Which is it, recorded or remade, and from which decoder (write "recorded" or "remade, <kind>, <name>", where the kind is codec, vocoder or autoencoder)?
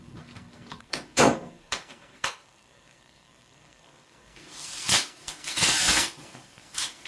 remade, codec, SNAC